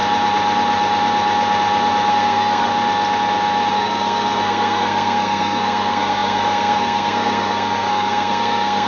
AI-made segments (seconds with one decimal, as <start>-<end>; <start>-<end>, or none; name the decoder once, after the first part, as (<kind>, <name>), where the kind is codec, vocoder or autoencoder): 2.1-2.7 (codec, SNAC); 3.7-8.9